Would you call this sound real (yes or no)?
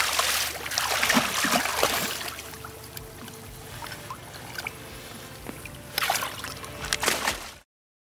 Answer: yes